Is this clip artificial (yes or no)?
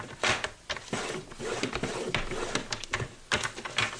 no